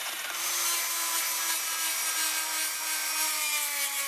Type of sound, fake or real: fake